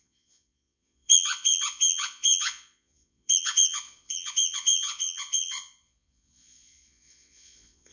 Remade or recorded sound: remade